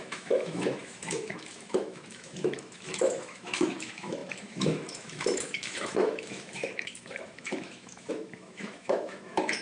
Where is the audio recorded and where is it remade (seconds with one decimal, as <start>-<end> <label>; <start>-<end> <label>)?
0.0-9.6 remade